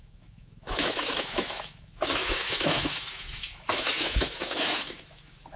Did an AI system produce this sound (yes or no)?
yes